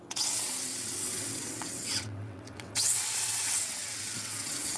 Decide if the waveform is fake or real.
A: fake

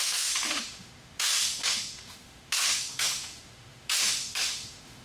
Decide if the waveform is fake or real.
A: fake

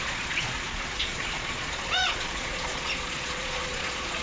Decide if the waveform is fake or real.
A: fake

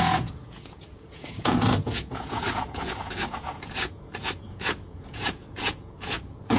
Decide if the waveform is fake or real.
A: fake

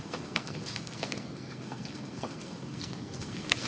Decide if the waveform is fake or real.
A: fake